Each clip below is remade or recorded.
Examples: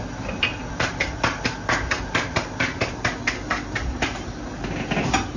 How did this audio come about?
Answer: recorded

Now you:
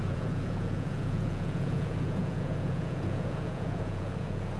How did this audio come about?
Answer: remade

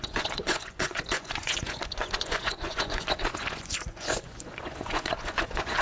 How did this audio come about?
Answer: remade